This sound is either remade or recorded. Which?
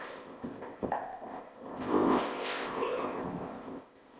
remade